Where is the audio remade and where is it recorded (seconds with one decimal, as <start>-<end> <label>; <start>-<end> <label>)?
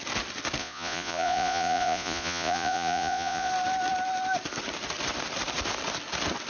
0.0-0.6 recorded; 0.6-3.5 remade; 3.5-6.5 recorded